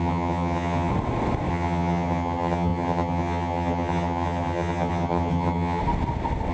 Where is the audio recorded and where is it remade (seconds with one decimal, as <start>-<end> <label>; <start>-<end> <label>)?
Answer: 0.0-0.9 remade; 0.9-1.5 recorded; 1.5-5.8 remade; 5.8-6.5 recorded